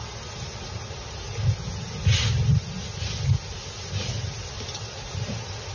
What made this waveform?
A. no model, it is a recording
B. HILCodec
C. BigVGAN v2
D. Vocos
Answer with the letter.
A